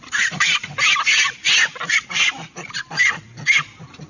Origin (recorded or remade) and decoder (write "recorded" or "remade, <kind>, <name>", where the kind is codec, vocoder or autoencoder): recorded